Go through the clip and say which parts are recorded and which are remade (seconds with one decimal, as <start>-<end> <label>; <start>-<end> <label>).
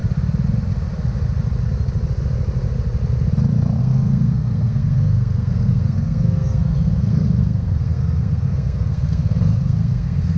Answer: 0.0-3.8 recorded; 3.8-10.4 remade